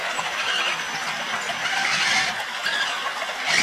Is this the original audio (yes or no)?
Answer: yes